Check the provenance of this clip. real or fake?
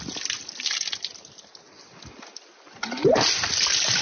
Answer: real